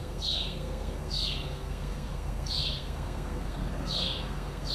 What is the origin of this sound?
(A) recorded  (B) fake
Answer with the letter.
B